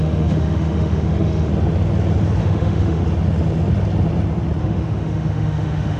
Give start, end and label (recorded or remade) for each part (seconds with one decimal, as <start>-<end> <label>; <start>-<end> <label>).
0.0-1.5 remade; 1.5-2.4 recorded; 2.4-3.0 remade; 3.0-4.6 recorded; 4.6-6.0 remade